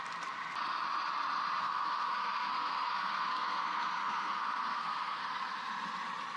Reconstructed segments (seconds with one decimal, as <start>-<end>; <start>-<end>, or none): 1.6-5.3